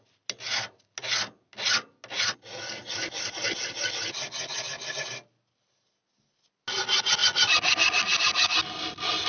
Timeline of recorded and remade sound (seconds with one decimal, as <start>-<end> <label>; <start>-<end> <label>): 0.0-9.3 recorded